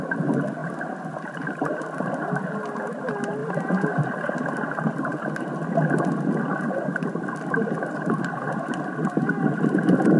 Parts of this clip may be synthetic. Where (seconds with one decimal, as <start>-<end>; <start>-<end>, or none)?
none